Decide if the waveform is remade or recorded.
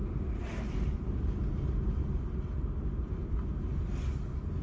recorded